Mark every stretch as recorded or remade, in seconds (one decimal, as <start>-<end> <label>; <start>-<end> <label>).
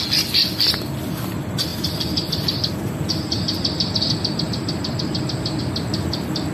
0.0-1.7 recorded; 1.7-5.6 remade; 5.6-6.5 recorded